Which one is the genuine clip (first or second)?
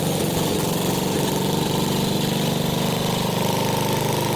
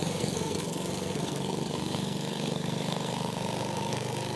first